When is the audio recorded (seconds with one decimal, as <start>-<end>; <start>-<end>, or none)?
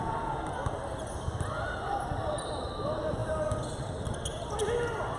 0.0-5.2